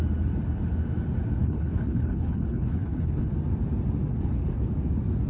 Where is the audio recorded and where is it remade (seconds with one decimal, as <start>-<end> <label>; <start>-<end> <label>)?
0.0-1.4 recorded; 1.4-3.3 remade; 3.3-4.1 recorded; 4.1-4.7 remade; 4.7-5.3 recorded